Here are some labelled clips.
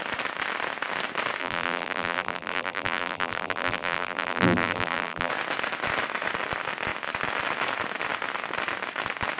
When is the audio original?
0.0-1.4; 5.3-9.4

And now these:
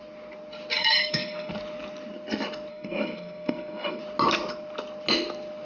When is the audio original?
0.0-0.8; 1.5-2.7; 4.0-5.7

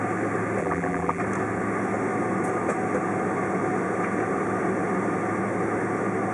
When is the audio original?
0.0-0.6; 1.2-6.3

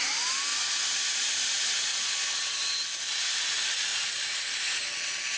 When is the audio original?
0.0-1.9; 2.6-3.9; 4.8-5.4

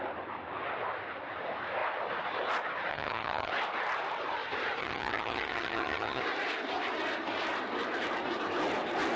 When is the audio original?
0.0-2.9; 3.5-4.8; 6.2-9.2

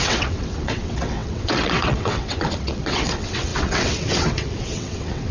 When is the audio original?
none

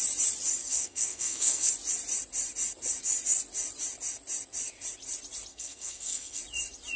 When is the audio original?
0.0-0.6; 1.7-5.5; 6.4-7.0